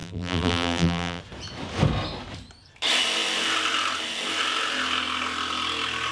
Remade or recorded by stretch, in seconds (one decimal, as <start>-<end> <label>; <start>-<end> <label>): 0.0-1.2 remade; 1.2-6.1 recorded